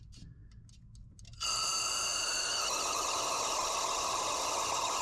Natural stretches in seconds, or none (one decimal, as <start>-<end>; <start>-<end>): 0.0-5.0